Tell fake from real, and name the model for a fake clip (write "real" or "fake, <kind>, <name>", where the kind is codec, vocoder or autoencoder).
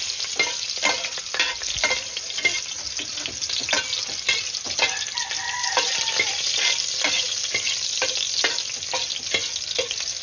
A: real